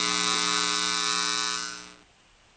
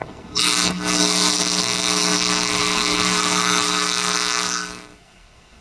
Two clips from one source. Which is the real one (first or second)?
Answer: first